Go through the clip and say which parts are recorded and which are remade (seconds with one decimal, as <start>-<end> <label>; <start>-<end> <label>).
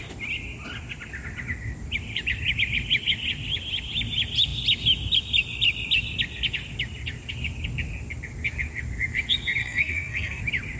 0.0-9.6 recorded; 9.6-10.4 remade; 10.4-10.8 recorded